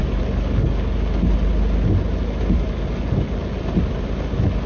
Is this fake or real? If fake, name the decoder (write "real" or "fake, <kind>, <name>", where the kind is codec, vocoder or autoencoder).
real